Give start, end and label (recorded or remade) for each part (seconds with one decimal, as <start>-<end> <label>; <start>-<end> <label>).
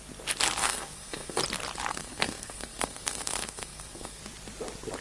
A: 0.0-0.6 recorded; 0.6-1.4 remade; 1.4-1.9 recorded; 1.9-4.2 remade; 4.2-5.0 recorded